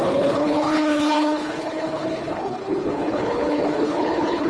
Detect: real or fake fake